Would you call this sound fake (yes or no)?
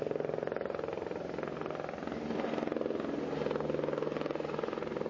no